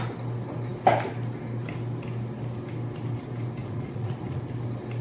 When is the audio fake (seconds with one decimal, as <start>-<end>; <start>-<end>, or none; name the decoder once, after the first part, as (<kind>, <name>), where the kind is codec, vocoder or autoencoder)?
3.6-4.4 (vocoder, Vocos)